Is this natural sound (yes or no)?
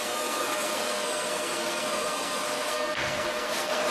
no